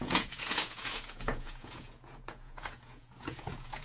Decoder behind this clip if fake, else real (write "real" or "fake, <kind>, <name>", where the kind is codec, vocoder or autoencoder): fake, vocoder, Vocos